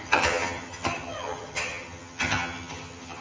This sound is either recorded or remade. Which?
remade